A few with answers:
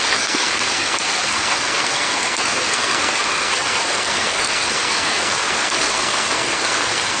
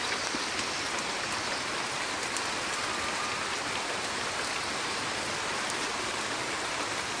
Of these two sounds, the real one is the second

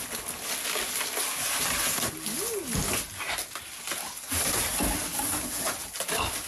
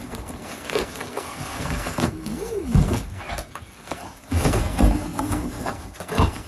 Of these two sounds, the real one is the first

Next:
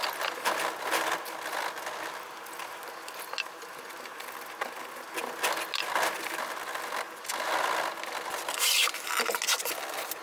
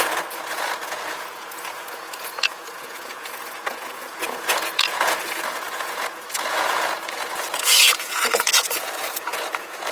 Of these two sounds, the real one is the first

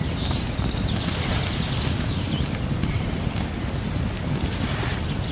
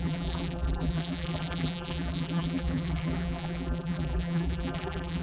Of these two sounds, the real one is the first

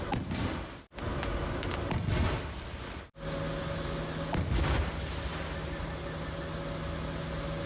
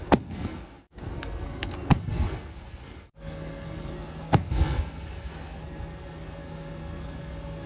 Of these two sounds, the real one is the first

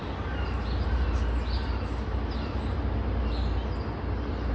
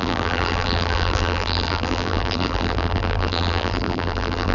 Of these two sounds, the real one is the first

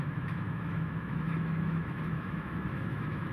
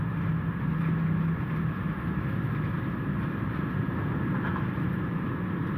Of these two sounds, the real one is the second